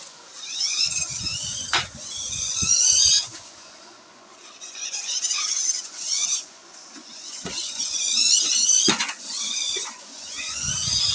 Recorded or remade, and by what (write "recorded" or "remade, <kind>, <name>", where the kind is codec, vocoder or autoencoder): remade, vocoder, Vocos